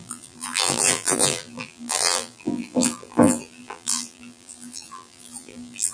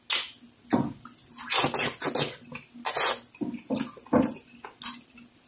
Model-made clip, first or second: first